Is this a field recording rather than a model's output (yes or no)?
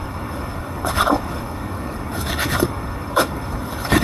no